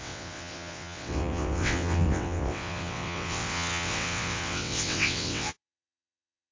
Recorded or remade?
remade